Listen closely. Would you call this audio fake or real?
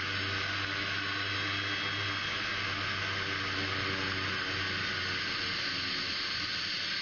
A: real